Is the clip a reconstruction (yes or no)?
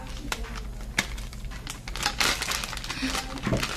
no